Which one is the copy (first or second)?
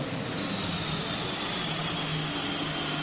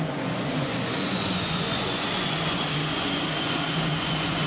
second